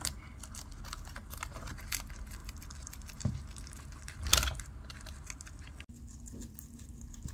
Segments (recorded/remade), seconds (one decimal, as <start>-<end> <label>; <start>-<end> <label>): 0.0-2.4 recorded; 2.4-3.3 remade; 3.3-7.3 recorded